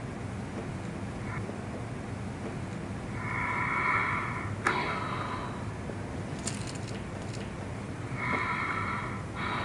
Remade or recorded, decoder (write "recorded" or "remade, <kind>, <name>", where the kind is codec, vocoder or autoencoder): recorded